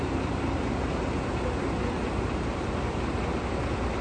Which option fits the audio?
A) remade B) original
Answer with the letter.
A